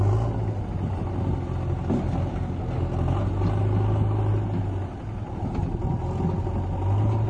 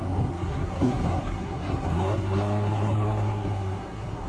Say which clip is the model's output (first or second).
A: second